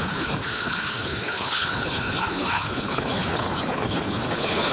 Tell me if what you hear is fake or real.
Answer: fake